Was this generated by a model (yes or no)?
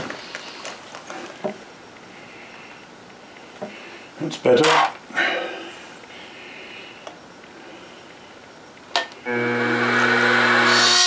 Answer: no